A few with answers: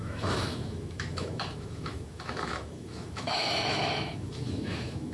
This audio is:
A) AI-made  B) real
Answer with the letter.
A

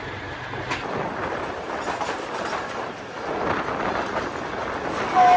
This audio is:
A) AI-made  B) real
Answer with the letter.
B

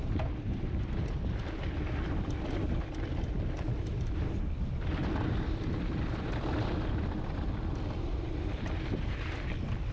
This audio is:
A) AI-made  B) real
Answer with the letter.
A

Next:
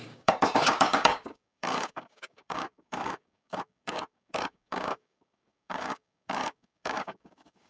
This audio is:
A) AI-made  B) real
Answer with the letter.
A